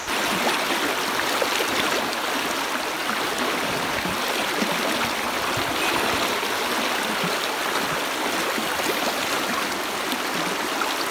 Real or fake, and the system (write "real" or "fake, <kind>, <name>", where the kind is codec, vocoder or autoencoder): real